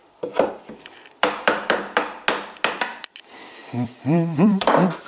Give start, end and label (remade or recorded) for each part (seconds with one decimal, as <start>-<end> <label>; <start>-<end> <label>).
0.0-2.0 remade; 2.0-3.6 recorded; 3.6-5.1 remade

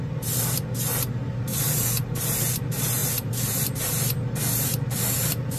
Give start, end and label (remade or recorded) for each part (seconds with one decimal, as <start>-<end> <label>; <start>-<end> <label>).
0.0-3.0 recorded; 3.0-3.9 remade; 3.9-5.6 recorded

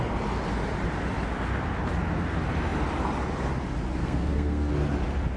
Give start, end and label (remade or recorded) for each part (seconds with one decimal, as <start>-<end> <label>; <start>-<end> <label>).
0.0-4.0 recorded; 4.0-4.7 remade; 4.7-5.4 recorded